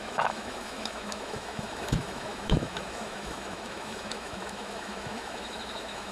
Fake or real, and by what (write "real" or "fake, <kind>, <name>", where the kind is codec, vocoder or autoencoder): fake, autoencoder, DAC-VAE